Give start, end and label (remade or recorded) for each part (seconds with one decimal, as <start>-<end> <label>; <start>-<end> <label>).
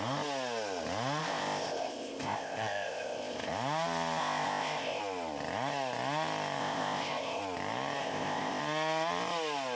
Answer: 0.0-1.2 recorded; 1.2-3.5 remade; 3.5-4.2 recorded; 4.2-5.0 remade; 5.0-6.6 recorded; 6.6-7.4 remade; 7.4-8.0 recorded; 8.0-8.6 remade; 8.6-9.8 recorded